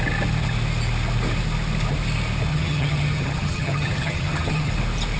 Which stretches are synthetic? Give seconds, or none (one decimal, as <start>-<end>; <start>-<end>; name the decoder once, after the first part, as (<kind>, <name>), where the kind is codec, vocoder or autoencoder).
2.5-4.7 (vocoder, HiFi-GAN)